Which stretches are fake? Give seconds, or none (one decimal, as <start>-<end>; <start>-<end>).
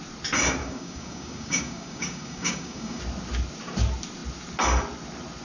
0.6-3.0